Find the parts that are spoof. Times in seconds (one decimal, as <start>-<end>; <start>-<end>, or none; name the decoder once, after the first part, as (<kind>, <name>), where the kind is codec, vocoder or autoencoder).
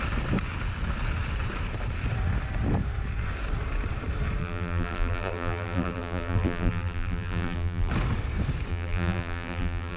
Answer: 4.4-7.9 (vocoder, BigVGAN v2); 8.7-10.0